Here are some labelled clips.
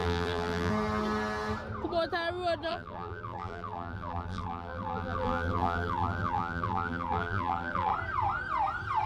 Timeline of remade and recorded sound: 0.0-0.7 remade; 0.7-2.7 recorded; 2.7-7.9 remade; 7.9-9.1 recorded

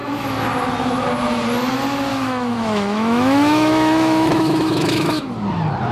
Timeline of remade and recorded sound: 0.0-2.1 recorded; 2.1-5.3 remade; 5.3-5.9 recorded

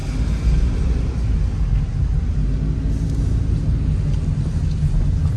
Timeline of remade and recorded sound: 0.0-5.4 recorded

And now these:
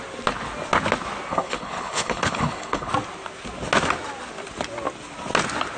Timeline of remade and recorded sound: 0.0-1.3 recorded; 1.3-2.9 remade; 2.9-5.8 recorded

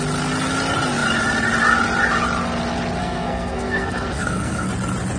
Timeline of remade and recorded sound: 0.0-3.0 recorded; 3.0-4.7 remade; 4.7-5.2 recorded

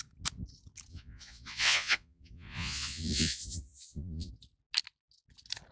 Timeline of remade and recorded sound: 0.0-0.9 recorded; 0.9-4.3 remade; 4.3-5.7 recorded

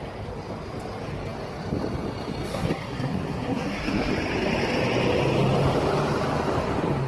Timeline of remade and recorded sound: 0.0-2.5 recorded; 2.5-4.1 remade; 4.1-7.1 recorded